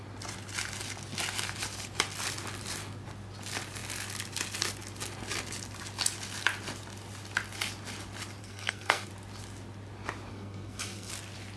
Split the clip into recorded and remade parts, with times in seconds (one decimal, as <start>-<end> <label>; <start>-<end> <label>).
0.0-8.4 recorded; 8.4-9.1 remade; 9.1-10.3 recorded; 10.3-11.1 remade; 11.1-11.6 recorded